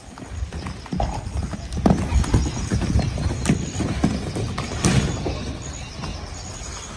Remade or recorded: recorded